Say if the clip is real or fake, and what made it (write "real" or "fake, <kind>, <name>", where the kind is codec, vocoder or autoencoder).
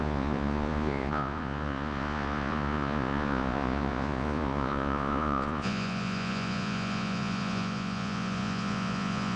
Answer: fake, vocoder, Vocos